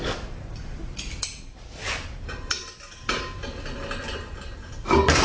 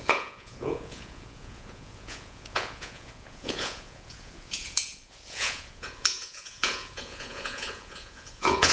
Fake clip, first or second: second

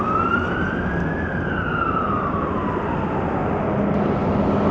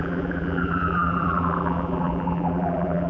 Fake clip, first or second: second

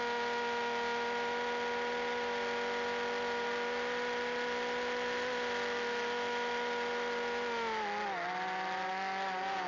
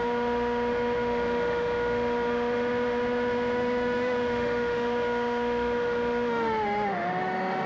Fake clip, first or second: second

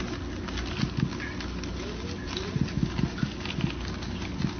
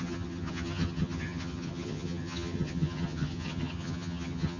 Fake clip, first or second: second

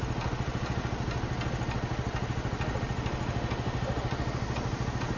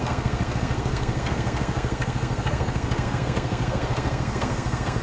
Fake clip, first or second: second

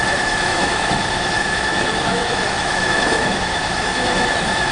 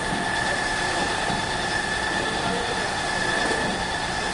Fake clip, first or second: first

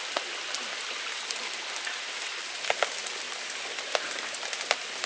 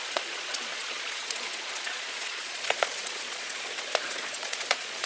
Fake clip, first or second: second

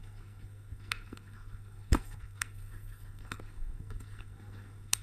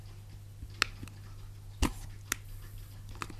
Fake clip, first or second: first